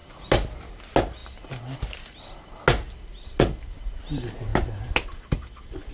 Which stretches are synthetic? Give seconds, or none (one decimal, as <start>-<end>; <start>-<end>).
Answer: none